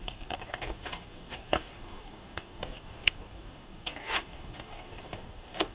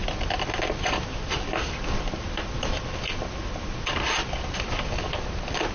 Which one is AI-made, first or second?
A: first